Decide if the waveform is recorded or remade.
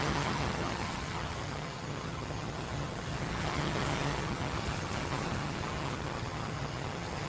remade